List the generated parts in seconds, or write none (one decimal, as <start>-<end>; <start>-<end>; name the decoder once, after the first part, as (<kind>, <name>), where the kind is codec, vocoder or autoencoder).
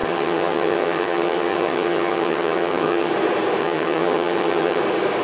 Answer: 0.0-3.1 (vocoder, HiFi-GAN); 3.6-4.8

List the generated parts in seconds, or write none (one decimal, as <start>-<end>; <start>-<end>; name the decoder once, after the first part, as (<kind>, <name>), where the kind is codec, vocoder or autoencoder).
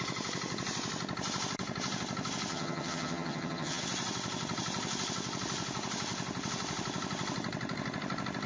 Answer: 2.5-3.8 (vocoder, HiFi-GAN)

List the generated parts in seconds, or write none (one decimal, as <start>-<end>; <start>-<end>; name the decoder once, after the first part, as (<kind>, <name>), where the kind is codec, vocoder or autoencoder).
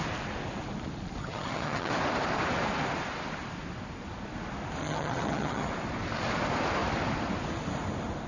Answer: 1.2-1.9 (vocoder, HiFi-GAN); 4.8-5.7